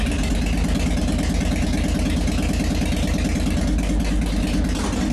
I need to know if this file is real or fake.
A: real